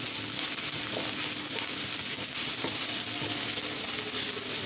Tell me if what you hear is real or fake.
real